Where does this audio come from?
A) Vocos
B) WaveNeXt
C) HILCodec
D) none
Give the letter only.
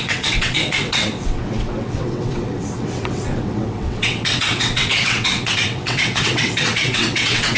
B